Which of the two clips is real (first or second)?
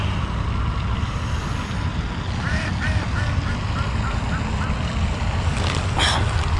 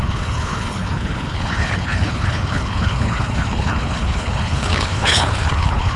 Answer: first